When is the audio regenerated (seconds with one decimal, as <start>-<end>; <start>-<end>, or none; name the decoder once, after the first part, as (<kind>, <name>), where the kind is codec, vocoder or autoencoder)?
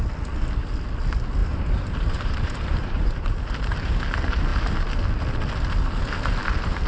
1.4-4.0 (vocoder, BigVGAN v2)